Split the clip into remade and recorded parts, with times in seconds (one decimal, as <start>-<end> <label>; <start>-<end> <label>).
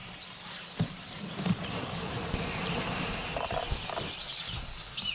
0.0-3.0 remade; 3.0-5.1 recorded